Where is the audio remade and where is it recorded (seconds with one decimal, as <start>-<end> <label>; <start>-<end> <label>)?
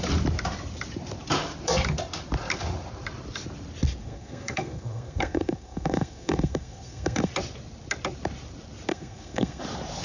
0.0-4.0 recorded; 4.0-7.3 remade; 7.3-8.9 recorded; 8.9-9.6 remade; 9.6-10.0 recorded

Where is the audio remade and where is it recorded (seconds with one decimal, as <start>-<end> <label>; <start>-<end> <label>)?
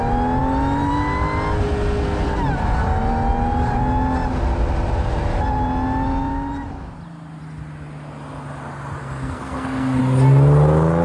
0.0-9.0 recorded; 9.0-10.0 remade; 10.0-11.0 recorded